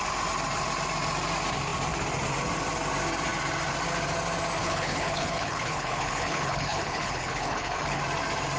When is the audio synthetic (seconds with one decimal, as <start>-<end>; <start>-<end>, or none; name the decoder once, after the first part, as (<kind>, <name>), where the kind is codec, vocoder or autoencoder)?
4.6-8.0 (codec, HILCodec)